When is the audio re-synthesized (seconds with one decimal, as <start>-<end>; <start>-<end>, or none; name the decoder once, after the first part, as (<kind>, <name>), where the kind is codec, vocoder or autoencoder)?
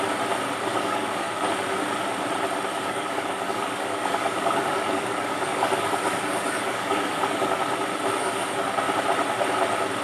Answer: 0.7-1.5 (codec, DAC); 2.7-7.6; 8.2-8.7